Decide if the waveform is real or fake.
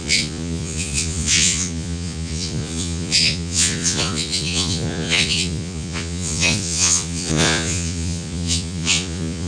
fake